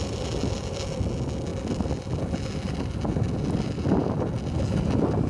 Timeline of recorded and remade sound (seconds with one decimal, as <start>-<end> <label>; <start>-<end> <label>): 0.0-5.3 recorded